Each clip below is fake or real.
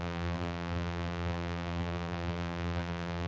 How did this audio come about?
fake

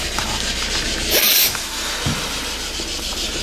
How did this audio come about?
real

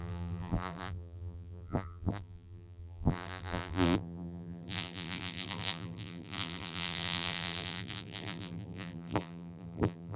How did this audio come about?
fake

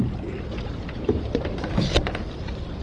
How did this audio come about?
fake